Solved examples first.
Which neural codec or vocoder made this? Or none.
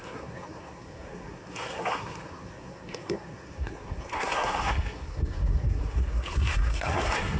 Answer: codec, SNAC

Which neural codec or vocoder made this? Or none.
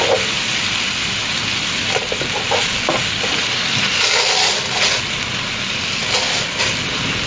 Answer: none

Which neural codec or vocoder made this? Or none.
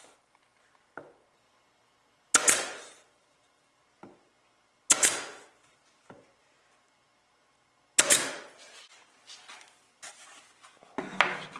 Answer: none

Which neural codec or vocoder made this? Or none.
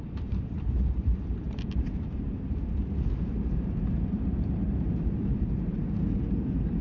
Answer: vocoder, BigVGAN v2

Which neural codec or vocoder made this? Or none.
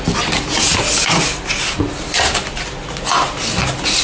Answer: none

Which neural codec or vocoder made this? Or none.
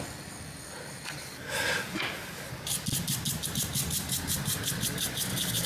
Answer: none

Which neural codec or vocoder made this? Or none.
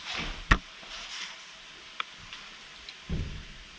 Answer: none